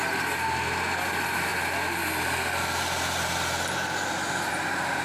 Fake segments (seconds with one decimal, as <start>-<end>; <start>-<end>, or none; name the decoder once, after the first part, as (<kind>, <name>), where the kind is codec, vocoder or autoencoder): none